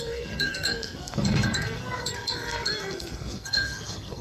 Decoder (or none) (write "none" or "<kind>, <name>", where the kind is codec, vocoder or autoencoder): codec, SNAC